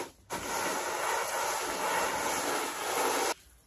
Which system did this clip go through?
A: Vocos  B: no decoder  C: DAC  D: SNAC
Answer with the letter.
B